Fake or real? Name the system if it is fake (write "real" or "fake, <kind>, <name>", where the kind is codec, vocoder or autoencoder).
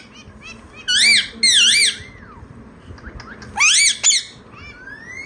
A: real